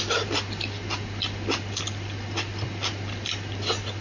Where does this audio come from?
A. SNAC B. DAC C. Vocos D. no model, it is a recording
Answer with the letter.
D